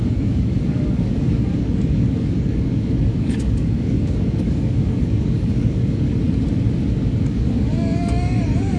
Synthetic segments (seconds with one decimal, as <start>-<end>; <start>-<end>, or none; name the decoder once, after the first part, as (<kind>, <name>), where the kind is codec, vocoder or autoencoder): 0.0-6.1 (codec, DAC); 6.9-8.8